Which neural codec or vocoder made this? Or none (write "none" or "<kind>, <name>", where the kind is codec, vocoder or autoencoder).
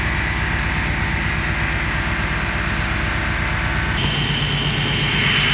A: none